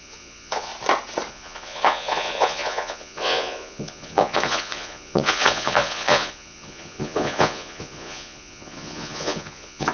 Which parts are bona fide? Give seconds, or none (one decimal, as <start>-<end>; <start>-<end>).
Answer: 0.7-1.3